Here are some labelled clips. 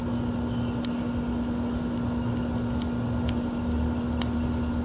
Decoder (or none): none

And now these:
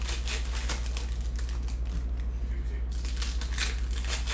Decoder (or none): none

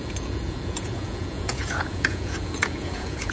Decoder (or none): vocoder, Vocos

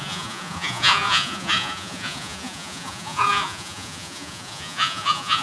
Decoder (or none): vocoder, Vocos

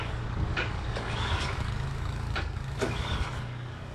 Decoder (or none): codec, DAC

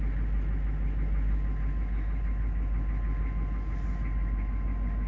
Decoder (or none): none